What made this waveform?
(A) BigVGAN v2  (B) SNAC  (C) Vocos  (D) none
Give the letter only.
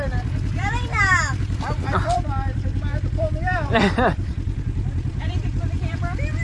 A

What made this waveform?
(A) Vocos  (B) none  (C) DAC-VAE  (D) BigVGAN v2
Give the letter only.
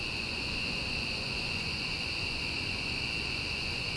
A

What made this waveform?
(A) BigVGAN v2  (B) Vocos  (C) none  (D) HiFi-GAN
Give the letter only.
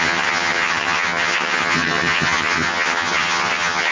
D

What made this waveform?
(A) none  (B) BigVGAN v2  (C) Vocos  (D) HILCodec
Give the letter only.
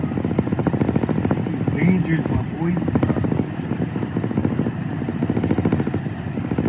A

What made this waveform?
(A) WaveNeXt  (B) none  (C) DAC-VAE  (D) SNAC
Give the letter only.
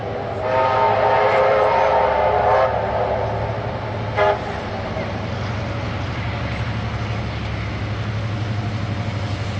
B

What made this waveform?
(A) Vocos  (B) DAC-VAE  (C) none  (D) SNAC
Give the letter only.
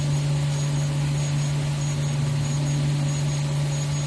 C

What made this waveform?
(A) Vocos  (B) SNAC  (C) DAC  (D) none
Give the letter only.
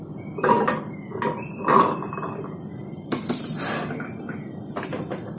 D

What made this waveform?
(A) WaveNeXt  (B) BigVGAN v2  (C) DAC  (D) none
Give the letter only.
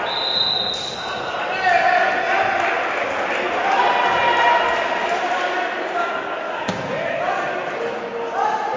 D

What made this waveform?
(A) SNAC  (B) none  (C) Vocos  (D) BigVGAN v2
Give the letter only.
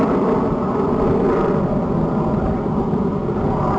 B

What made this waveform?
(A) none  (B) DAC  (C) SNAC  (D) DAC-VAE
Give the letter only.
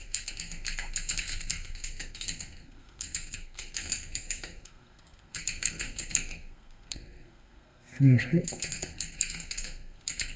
C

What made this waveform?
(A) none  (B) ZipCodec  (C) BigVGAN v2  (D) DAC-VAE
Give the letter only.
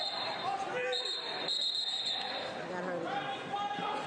C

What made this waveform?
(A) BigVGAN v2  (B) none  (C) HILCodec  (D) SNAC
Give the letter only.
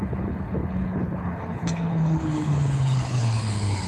C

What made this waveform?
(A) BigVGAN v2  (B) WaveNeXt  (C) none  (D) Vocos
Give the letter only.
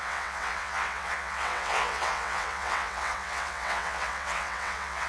B